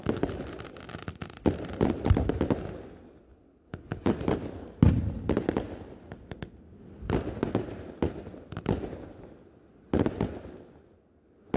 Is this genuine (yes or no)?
yes